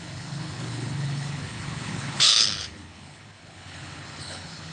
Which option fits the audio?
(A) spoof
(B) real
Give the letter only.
A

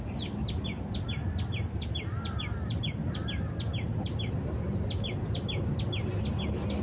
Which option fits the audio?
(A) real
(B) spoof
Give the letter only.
A